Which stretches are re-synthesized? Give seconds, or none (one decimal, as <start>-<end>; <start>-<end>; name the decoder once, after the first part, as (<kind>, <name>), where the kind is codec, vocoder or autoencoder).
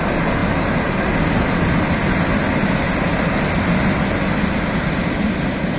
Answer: none